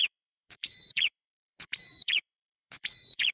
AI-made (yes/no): yes